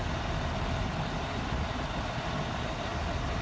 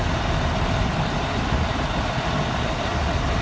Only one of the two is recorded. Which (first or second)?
first